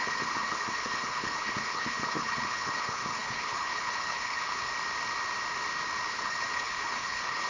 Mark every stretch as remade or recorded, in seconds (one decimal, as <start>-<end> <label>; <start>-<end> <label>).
0.0-4.7 remade; 4.7-6.1 recorded; 6.1-7.5 remade